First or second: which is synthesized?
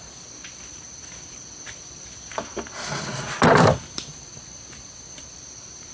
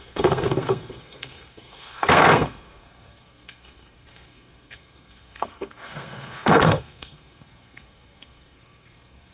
second